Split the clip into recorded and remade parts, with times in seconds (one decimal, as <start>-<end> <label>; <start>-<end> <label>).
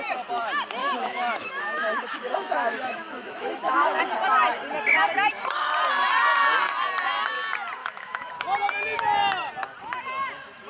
0.0-0.8 recorded; 0.8-4.0 remade; 4.0-7.8 recorded; 7.8-8.3 remade; 8.3-10.7 recorded